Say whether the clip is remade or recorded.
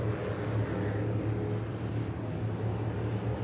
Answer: recorded